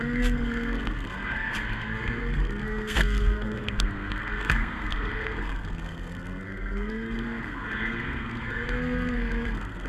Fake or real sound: fake